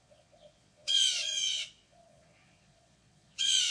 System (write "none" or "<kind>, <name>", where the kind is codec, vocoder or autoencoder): vocoder, Vocos